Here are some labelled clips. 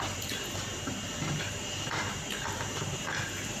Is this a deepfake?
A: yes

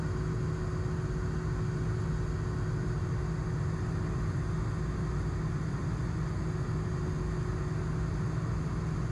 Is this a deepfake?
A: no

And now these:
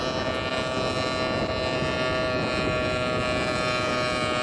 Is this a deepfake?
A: no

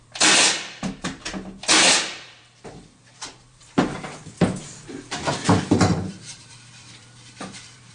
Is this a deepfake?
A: yes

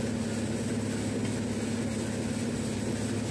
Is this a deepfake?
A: no